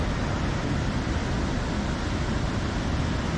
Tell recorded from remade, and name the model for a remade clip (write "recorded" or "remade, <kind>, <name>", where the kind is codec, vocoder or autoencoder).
recorded